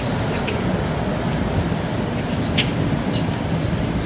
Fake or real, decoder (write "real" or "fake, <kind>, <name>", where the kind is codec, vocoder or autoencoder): real